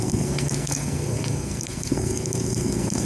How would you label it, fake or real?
fake